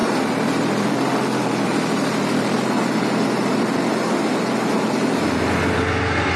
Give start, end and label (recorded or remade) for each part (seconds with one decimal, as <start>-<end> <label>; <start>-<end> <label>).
0.0-3.8 remade; 3.8-6.4 recorded